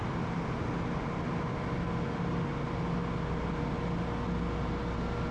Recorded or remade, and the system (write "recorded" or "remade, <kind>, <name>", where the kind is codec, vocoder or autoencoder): recorded